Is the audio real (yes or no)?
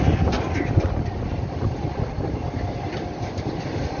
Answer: yes